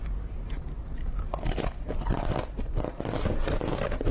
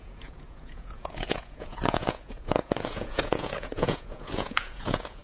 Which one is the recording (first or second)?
first